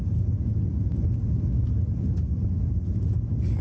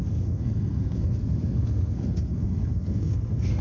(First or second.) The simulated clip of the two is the second